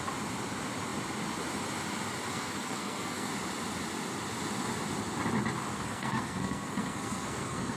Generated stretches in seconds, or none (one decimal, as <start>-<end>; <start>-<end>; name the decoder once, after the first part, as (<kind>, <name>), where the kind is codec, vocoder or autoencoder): 2.3-3.3 (codec, SNAC); 5.7-7.8